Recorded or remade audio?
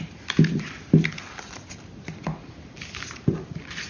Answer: recorded